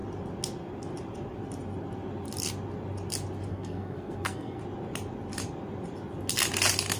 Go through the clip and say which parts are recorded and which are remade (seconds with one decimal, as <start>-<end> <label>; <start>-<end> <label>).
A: 0.0-3.5 recorded; 3.5-4.6 remade; 4.6-7.0 recorded